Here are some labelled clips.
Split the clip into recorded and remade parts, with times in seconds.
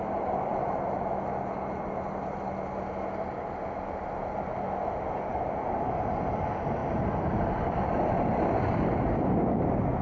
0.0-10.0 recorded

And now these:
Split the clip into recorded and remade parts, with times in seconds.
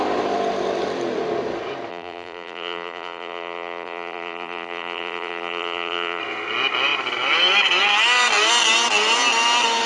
0.0-1.9 recorded; 1.9-6.2 remade; 6.2-9.9 recorded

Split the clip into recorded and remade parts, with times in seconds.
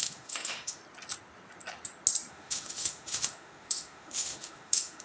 0.0-0.8 remade; 0.8-2.3 recorded; 2.3-5.0 remade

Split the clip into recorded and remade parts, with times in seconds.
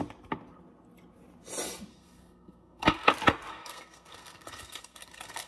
0.0-1.9 recorded; 1.9-3.1 remade; 3.1-3.5 recorded; 3.5-5.5 remade